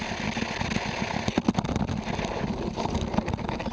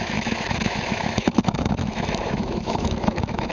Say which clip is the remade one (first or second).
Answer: second